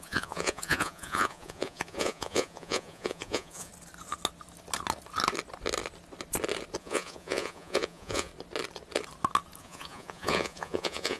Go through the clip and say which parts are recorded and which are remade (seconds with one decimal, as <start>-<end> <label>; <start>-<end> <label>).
0.0-3.7 remade; 3.7-6.8 recorded; 6.8-8.3 remade; 8.3-9.6 recorded; 9.6-11.2 remade